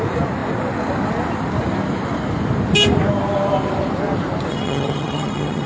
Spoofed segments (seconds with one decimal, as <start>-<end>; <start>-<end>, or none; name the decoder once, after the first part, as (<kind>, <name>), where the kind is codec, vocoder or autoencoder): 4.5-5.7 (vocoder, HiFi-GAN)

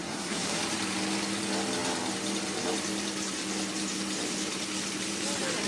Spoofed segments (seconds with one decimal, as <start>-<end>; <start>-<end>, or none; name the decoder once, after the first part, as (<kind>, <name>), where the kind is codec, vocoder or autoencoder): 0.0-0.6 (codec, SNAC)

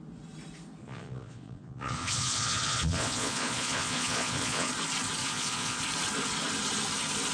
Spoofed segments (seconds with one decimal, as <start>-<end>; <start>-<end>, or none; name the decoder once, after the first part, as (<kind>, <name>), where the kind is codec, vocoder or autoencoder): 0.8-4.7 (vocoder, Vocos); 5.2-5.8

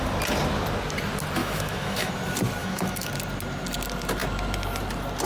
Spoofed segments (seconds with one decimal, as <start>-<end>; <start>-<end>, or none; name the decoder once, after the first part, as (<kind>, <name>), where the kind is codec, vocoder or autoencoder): 1.4-2.1 (autoencoder, DAC-VAE); 2.6-3.1

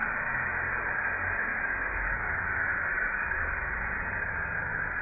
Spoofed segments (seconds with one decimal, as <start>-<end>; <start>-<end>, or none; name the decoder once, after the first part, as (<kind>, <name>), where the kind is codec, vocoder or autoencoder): 1.5-3.4 (codec, DAC)

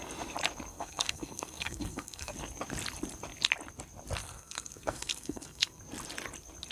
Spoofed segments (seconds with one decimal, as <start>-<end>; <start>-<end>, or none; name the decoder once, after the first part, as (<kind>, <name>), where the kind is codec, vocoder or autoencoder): 0.7-2.3 (codec, SNAC); 4.2-5.8

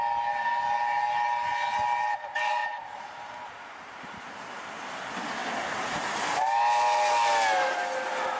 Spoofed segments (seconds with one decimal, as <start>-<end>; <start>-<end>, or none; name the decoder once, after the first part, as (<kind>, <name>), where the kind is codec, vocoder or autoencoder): 2.6-4.2 (vocoder, BigVGAN v2); 5.4-6.2